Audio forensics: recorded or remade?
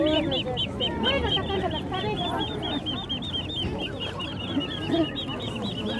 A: recorded